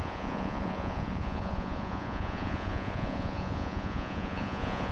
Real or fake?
fake